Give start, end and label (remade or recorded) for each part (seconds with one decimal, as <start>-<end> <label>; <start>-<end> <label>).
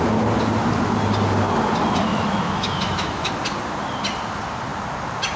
0.0-2.1 recorded; 2.1-3.3 remade; 3.3-5.4 recorded